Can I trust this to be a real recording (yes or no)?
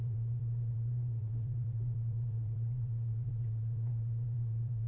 no